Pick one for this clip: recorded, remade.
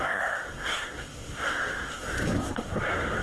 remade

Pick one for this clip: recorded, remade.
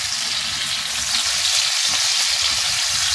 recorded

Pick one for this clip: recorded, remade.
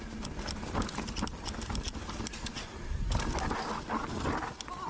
recorded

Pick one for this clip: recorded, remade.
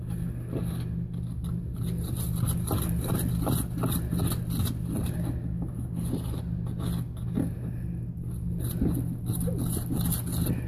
recorded